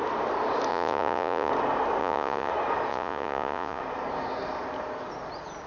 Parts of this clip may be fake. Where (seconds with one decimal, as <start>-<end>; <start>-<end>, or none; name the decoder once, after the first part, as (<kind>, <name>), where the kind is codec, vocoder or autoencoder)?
0.7-1.5 (vocoder, Vocos); 2.0-2.5; 2.9-3.8